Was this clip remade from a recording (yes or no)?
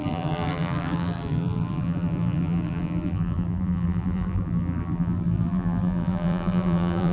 yes